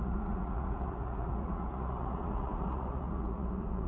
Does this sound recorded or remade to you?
remade